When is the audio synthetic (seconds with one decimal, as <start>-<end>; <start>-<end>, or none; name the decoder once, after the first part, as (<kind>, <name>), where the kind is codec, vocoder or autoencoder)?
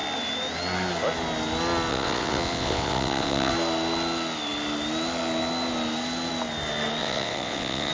1.9-3.5 (vocoder, WaveNeXt); 7.0-7.9